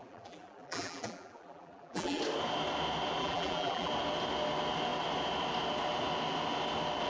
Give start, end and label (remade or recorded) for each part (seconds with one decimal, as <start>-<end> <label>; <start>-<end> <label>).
0.0-2.2 remade; 2.2-3.2 recorded; 3.2-3.9 remade; 3.9-7.1 recorded

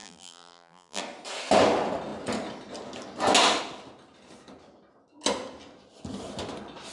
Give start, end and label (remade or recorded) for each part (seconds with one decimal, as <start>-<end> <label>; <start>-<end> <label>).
0.0-1.0 remade; 1.0-6.9 recorded

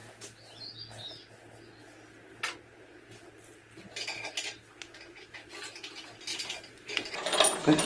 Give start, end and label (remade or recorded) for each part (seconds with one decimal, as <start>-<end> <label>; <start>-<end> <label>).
0.0-6.3 recorded; 6.3-7.9 remade

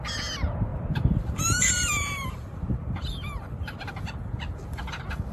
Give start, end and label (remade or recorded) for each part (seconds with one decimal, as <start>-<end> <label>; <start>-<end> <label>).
0.0-0.7 recorded; 0.7-3.9 remade; 3.9-5.3 recorded

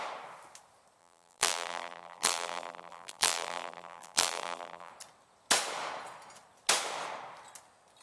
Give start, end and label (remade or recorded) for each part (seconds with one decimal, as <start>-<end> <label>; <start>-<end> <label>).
0.0-1.0 recorded; 1.0-4.9 remade; 4.9-8.0 recorded

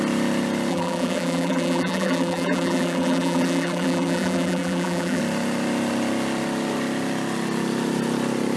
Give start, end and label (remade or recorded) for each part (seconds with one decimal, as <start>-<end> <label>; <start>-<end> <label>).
0.0-0.7 recorded; 0.7-5.2 remade; 5.2-8.6 recorded

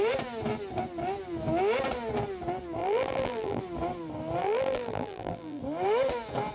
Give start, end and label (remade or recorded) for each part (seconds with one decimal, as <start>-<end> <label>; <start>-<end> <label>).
0.0-2.8 recorded; 2.8-3.6 remade; 3.6-4.4 recorded; 4.4-5.6 remade; 5.6-6.5 recorded

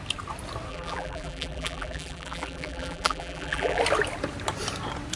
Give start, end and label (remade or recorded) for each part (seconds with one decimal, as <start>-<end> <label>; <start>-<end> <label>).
0.0-0.7 recorded; 0.7-3.8 remade; 3.8-5.2 recorded